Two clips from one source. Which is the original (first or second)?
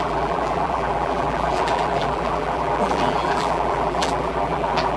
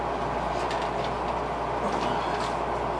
second